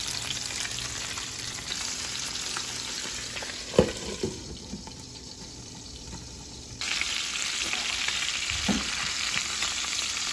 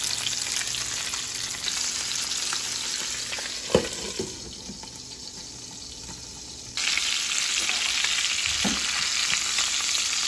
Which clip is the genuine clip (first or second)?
second